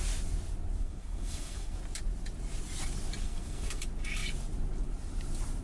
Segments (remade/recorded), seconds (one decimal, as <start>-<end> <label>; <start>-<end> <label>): 0.0-0.8 recorded; 0.8-1.8 remade; 1.8-3.2 recorded; 3.2-3.8 remade; 3.8-5.6 recorded